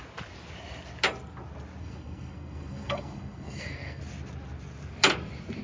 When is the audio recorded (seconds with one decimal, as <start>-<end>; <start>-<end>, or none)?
0.0-1.8; 4.0-5.6